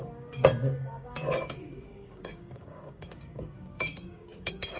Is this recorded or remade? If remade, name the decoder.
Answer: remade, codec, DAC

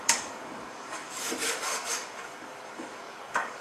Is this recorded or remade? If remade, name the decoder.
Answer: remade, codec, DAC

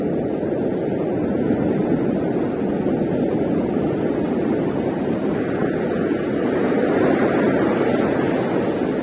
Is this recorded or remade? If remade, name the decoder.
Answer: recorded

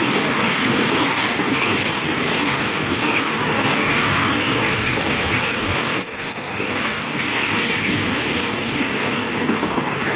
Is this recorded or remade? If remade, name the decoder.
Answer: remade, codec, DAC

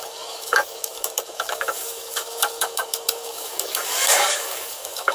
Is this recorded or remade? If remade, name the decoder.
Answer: remade, codec, DAC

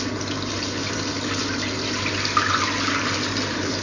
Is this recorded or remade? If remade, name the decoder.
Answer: recorded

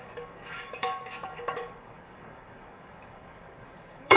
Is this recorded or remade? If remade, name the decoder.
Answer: remade, codec, DAC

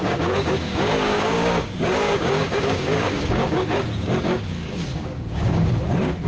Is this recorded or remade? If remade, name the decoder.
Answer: remade, codec, DAC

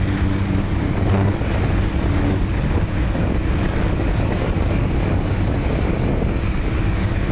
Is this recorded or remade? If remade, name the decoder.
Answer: remade, codec, DAC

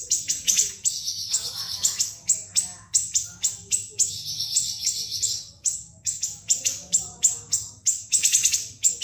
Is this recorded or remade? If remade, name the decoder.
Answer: remade, codec, DAC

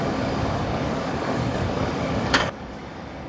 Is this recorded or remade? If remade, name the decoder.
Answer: remade, codec, DAC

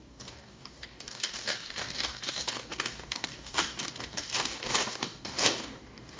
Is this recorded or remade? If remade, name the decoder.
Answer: remade, codec, DAC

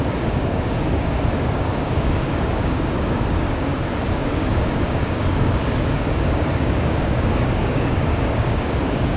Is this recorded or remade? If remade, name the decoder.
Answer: remade, codec, DAC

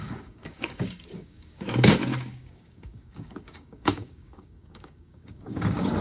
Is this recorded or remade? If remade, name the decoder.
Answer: remade, codec, DAC